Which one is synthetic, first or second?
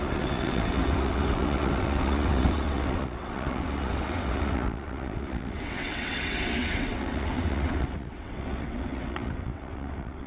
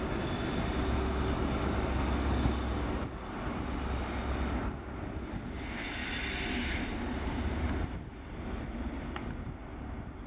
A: first